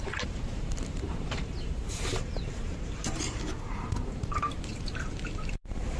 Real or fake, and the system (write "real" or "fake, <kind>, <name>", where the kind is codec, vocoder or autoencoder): fake, vocoder, BigVGAN v2